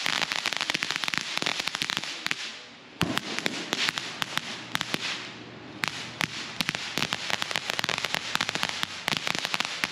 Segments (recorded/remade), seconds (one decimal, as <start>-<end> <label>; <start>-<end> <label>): 0.0-1.5 recorded; 1.5-2.4 remade; 2.4-7.0 recorded; 7.0-8.1 remade; 8.1-9.9 recorded